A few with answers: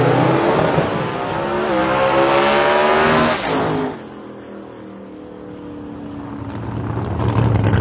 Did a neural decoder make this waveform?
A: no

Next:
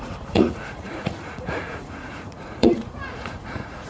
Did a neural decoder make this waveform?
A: yes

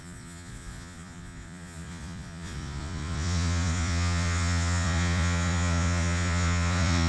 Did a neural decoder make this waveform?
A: yes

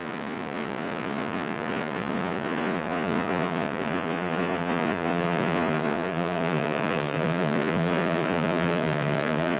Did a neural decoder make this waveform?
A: yes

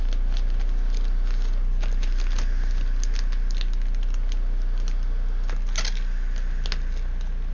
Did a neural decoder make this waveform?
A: no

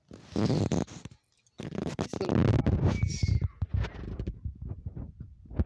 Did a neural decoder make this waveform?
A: no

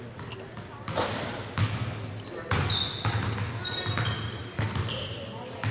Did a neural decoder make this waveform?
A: no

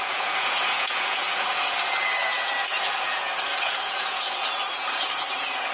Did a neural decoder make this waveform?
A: yes